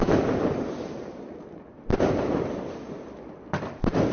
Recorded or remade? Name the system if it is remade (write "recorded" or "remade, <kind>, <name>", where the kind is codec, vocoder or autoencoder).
recorded